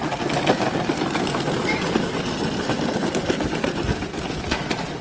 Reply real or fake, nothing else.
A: real